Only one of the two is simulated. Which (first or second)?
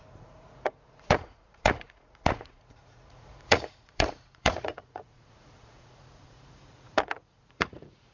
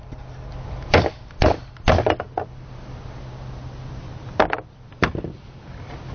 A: first